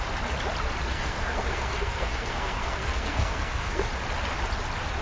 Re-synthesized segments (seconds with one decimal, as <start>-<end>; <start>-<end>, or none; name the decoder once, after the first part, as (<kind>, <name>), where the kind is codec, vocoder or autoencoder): 0.9-3.9 (codec, SNAC)